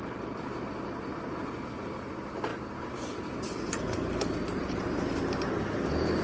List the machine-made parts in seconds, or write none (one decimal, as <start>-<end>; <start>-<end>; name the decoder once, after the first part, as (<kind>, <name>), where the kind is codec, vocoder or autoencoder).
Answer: none